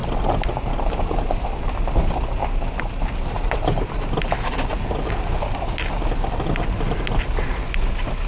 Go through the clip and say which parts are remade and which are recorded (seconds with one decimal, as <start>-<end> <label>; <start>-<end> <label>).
0.0-8.3 recorded